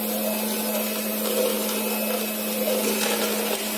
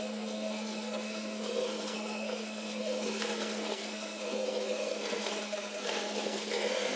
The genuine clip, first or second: first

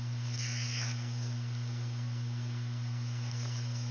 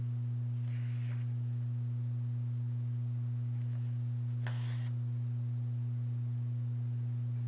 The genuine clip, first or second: second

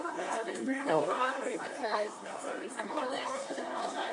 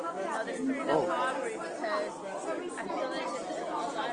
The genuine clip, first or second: second